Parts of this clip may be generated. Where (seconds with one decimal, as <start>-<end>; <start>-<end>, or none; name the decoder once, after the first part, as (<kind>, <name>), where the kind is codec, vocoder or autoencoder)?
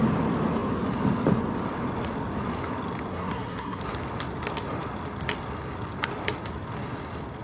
3.1-3.8 (codec, SNAC)